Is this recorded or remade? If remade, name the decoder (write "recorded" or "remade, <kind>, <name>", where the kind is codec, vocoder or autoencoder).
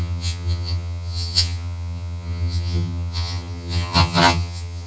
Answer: remade, vocoder, HiFi-GAN